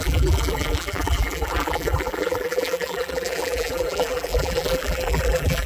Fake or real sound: fake